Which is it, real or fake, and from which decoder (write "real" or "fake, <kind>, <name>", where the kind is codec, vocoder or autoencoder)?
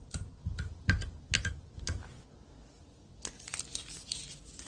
real